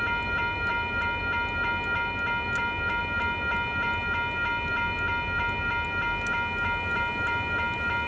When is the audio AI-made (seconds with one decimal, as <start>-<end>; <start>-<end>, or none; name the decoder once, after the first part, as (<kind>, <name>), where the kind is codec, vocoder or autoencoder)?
none